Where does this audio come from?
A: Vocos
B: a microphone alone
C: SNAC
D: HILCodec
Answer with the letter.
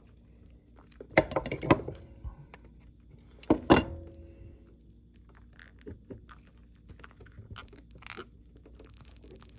B